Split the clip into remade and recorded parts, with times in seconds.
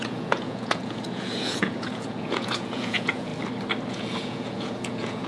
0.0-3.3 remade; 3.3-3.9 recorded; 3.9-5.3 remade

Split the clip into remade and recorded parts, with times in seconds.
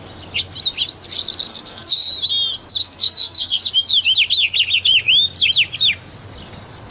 0.0-1.5 recorded; 1.5-2.1 remade; 2.1-2.8 recorded; 2.8-3.6 remade; 3.6-6.9 recorded